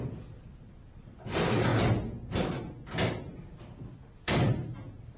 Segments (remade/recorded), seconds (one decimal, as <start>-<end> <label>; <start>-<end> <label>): 0.0-5.2 recorded